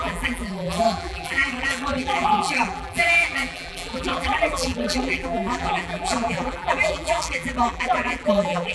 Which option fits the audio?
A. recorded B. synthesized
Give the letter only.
B